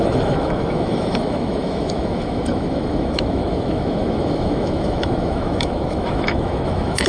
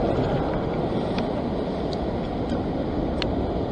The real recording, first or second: second